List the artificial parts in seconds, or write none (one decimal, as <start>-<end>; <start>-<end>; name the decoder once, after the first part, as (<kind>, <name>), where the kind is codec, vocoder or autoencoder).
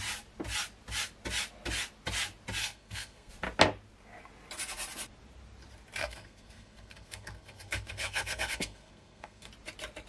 2.6-3.3 (codec, SNAC); 6.0-9.5